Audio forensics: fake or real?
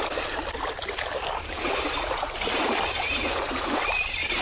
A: fake